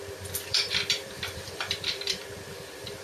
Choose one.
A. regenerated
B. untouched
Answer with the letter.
A